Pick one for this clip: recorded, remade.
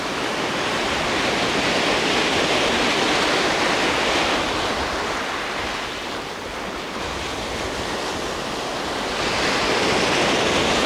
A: recorded